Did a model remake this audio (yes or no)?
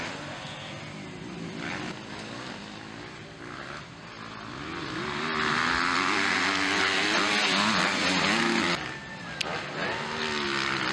no